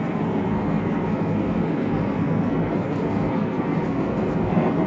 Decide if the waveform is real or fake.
fake